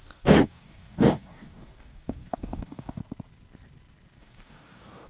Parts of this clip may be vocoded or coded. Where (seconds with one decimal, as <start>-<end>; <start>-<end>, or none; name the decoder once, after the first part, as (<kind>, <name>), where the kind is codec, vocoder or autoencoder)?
0.0-3.0 (codec, DAC); 4.2-5.1